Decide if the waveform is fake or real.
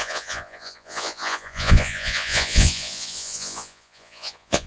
fake